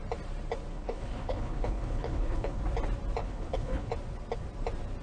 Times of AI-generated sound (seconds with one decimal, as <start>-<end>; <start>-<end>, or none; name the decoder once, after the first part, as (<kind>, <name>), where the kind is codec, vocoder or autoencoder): 0.7-2.6 (codec, HILCodec); 3.2-3.9